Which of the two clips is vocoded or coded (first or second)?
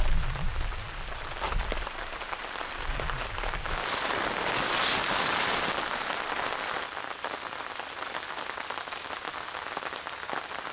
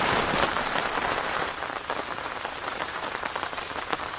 second